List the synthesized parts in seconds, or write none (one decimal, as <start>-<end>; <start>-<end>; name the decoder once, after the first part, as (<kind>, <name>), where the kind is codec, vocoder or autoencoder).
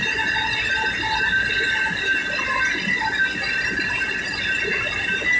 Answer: 0.0-2.2 (vocoder, BigVGAN v2)